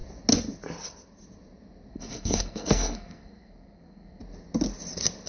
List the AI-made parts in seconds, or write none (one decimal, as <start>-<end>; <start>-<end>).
1.9-4.2